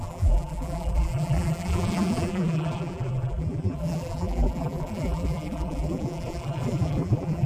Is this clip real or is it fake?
fake